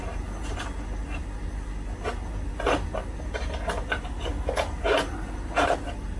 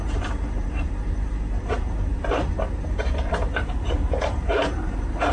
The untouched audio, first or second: first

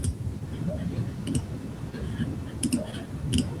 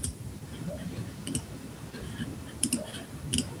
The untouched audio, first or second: first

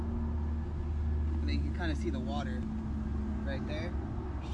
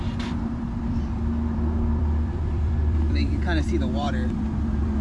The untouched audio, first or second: first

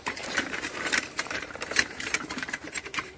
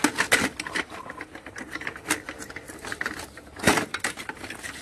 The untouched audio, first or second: second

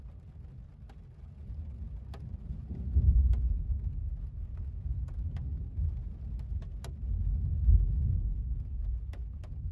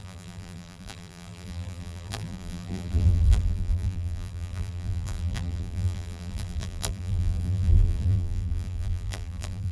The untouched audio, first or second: first